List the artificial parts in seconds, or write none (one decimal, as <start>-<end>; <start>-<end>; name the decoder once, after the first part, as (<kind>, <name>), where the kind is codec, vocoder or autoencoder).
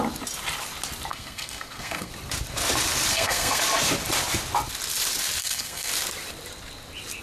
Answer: 1.1-2.1 (codec, SNAC); 3.1-3.6; 5.4-5.9